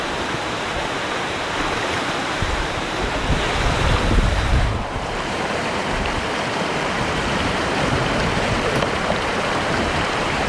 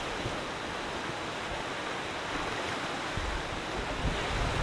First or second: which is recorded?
second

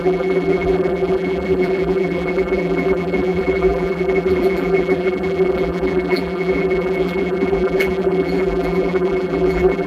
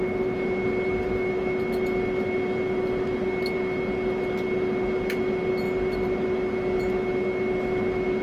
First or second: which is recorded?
second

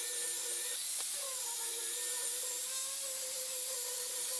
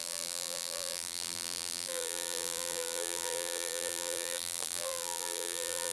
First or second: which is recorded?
first